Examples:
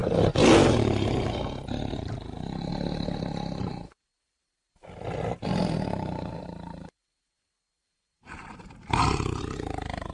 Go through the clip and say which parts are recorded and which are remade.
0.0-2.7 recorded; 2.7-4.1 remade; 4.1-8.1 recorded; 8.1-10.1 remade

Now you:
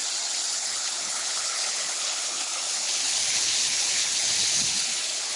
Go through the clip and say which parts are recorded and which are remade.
0.0-0.5 recorded; 0.5-5.4 remade